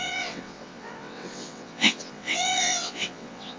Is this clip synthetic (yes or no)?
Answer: yes